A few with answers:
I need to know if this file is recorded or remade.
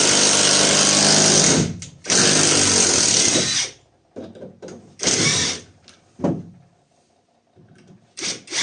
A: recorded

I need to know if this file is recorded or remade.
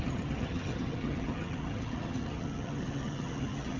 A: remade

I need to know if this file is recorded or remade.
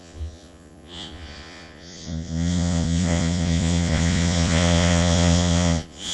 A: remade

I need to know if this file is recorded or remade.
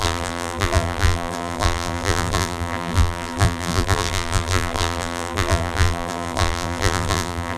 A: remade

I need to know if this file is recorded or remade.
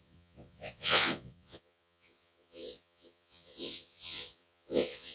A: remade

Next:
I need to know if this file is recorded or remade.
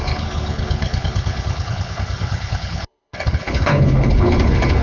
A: remade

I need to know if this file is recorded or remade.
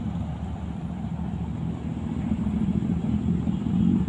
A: recorded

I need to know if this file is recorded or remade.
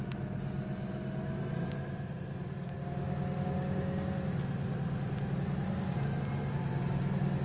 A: recorded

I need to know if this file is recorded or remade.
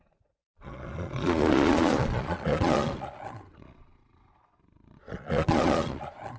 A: remade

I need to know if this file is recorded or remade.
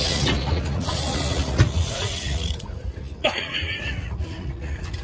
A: remade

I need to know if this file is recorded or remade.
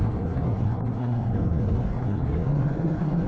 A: remade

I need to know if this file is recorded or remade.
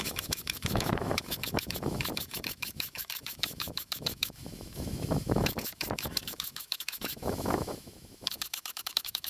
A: remade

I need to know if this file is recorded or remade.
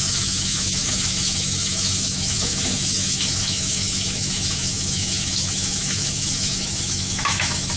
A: remade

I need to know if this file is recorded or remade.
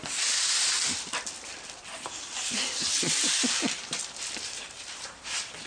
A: remade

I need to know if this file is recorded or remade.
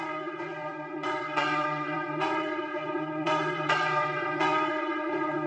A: remade